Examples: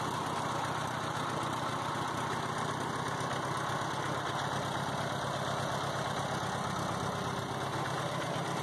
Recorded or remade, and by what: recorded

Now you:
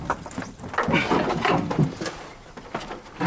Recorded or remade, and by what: recorded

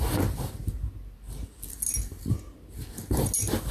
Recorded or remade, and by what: recorded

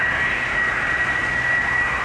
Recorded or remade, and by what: recorded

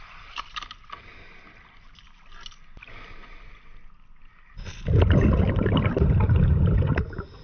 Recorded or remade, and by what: recorded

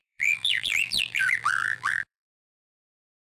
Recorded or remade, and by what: remade, vocoder, BigVGAN v2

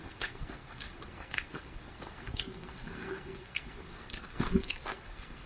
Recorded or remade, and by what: remade, codec, SNAC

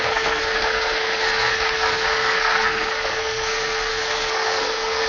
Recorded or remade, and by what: remade, codec, SNAC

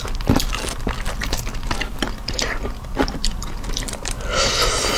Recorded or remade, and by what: remade, vocoder, BigVGAN v2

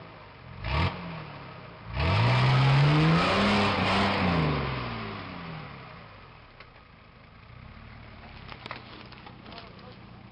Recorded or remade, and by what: recorded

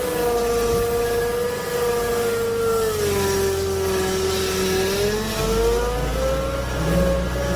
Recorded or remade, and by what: recorded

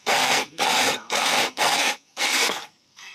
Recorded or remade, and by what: remade, codec, SNAC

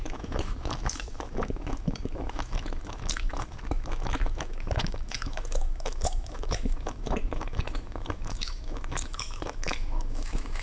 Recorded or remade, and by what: remade, autoencoder, DAC-VAE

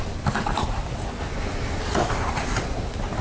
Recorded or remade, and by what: recorded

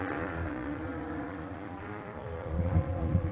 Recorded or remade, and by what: remade, vocoder, Vocos